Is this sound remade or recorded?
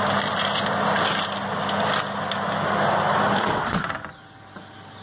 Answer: recorded